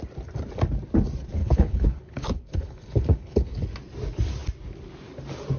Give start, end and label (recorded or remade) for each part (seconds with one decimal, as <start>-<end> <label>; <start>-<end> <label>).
0.0-1.4 recorded; 1.4-3.6 remade; 3.6-5.6 recorded